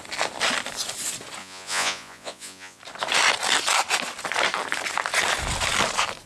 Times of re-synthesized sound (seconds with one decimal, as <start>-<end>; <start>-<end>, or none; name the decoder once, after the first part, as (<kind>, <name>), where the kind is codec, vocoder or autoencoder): 1.4-2.8 (vocoder, Vocos)

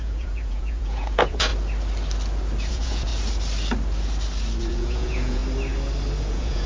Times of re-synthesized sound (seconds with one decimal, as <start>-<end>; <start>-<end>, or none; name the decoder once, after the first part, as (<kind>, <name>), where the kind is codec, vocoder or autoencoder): 0.0-1.5 (vocoder, Vocos); 2.7-3.1; 4.6-5.4; 6.2-6.7